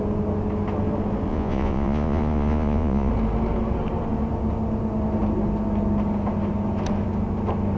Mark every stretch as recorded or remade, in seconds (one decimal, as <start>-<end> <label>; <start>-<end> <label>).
0.0-1.3 recorded; 1.3-3.1 remade; 3.1-7.8 recorded